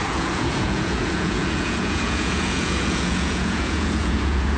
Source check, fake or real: fake